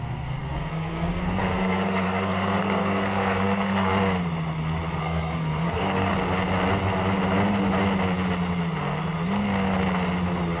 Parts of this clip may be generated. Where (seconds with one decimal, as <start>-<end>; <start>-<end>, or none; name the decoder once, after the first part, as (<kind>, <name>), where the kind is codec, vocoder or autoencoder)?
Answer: 0.0-3.9 (codec, SNAC); 5.0-6.1